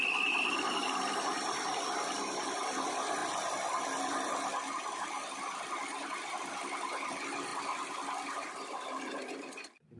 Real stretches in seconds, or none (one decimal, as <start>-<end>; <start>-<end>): 3.2-4.9